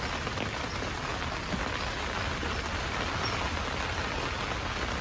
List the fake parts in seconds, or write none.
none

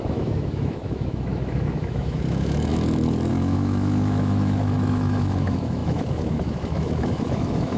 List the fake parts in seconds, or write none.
0.0-7.8 (autoencoder, DAC-VAE)